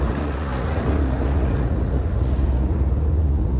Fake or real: fake